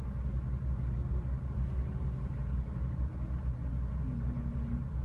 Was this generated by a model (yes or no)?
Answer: no